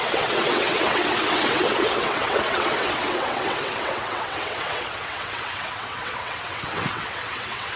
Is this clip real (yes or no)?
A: no